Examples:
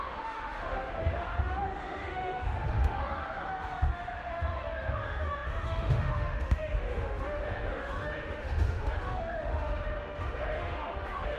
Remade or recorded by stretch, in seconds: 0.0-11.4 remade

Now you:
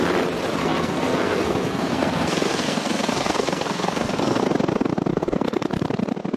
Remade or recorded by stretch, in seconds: 0.0-0.6 recorded; 0.6-4.4 remade; 4.4-5.1 recorded; 5.1-5.7 remade; 5.7-6.4 recorded

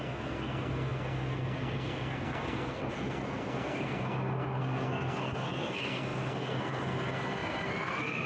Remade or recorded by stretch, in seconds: 0.0-8.3 remade